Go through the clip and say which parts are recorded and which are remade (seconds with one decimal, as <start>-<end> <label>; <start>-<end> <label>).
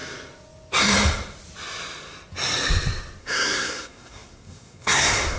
0.0-3.2 recorded; 3.2-5.4 remade